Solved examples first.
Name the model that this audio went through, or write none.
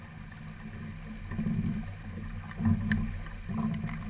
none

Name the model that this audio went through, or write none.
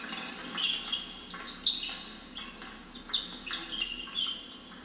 none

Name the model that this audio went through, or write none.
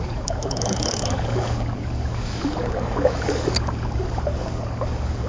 codec, DAC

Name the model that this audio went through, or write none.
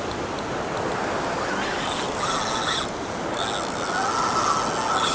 none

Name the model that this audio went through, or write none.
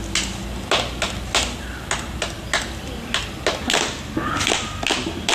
none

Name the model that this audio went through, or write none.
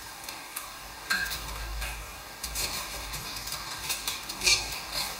codec, DAC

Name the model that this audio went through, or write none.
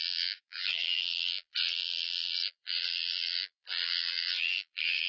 vocoder, BigVGAN v2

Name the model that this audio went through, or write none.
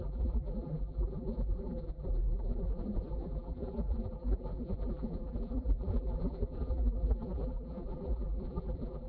vocoder, BigVGAN v2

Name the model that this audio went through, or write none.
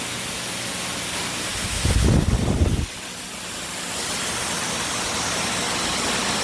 none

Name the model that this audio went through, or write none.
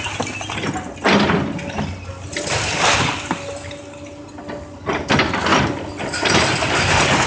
none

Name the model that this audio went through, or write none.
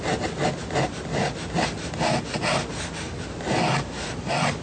none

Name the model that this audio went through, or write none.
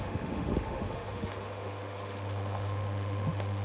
autoencoder, DAC-VAE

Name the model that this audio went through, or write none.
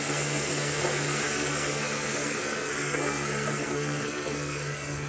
codec, SNAC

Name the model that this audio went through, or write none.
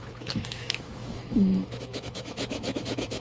autoencoder, DAC-VAE